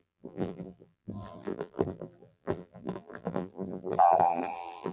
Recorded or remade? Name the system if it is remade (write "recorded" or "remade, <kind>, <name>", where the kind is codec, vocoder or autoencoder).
remade, vocoder, BigVGAN v2